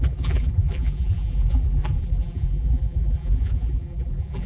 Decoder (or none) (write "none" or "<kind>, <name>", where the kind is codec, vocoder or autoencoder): vocoder, BigVGAN v2